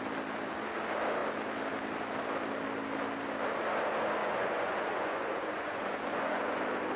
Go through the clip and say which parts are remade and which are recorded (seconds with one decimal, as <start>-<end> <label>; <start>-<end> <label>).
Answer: 0.0-4.2 recorded; 4.2-6.6 remade; 6.6-7.0 recorded